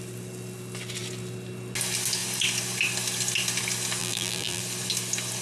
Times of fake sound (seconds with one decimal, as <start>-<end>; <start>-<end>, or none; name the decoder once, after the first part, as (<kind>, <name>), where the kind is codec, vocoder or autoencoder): 4.0-4.6 (vocoder, BigVGAN v2)